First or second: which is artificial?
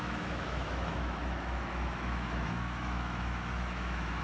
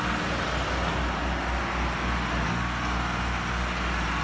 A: first